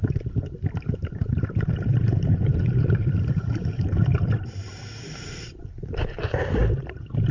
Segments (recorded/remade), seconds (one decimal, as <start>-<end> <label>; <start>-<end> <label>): 0.0-1.2 recorded; 1.2-5.6 remade; 5.6-7.3 recorded